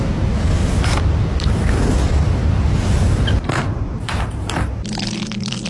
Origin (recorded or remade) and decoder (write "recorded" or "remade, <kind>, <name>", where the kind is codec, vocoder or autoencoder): remade, vocoder, BigVGAN v2